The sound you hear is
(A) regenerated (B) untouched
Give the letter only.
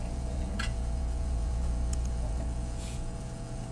A